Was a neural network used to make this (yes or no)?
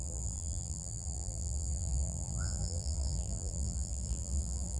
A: yes